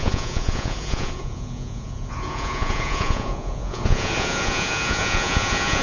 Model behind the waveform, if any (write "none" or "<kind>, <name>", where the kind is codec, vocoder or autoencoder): vocoder, Vocos